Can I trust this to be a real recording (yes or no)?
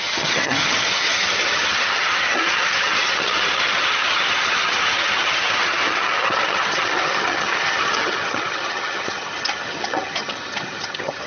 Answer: no